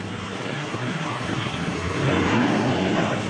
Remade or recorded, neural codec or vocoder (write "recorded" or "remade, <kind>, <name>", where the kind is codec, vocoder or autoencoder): remade, codec, SNAC